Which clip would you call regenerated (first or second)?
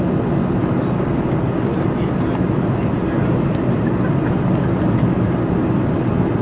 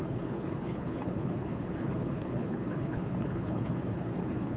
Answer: second